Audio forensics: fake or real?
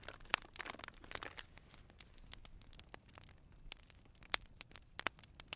real